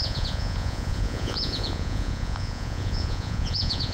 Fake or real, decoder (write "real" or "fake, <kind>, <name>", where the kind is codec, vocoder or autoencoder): fake, vocoder, Vocos